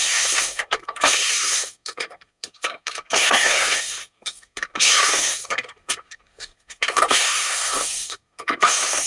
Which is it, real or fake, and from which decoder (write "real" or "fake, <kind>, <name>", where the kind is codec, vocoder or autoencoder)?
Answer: fake, codec, SNAC